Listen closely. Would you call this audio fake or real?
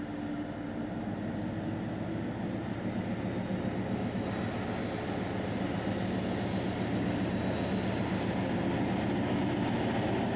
real